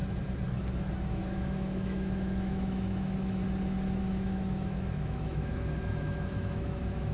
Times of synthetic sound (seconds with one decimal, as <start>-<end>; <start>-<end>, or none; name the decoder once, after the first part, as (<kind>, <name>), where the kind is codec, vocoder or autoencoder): 1.1-3.4 (autoencoder, DAC-VAE); 4.0-7.1